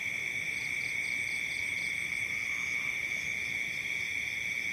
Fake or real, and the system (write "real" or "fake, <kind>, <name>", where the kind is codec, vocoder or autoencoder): real